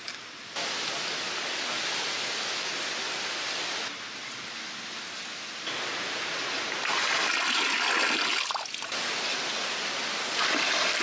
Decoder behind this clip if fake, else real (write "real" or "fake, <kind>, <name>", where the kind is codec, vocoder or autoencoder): real